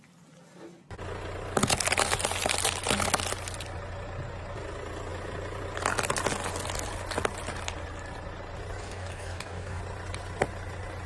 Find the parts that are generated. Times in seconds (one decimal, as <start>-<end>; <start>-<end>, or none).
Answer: 8.8-9.8